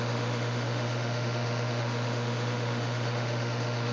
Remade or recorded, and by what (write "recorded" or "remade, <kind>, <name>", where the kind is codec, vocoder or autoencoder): remade, autoencoder, DAC-VAE